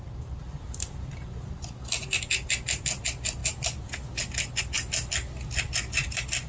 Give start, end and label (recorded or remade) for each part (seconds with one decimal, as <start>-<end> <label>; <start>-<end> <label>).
0.0-6.5 recorded